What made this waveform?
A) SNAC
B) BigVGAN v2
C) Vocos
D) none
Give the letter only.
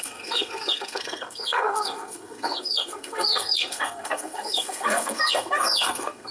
A